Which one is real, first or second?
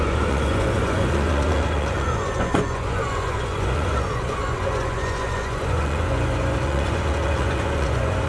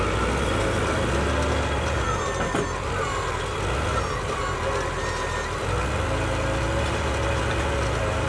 second